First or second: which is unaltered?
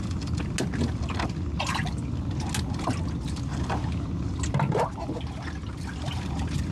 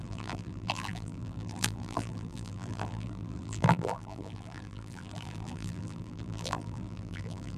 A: first